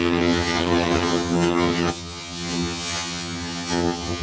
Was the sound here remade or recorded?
remade